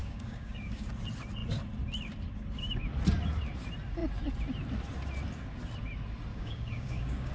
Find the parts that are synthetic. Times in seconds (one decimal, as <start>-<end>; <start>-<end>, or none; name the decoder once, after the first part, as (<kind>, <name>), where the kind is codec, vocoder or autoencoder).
0.0-0.9 (codec, DAC); 6.3-7.3